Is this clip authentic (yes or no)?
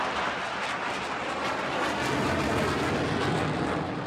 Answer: yes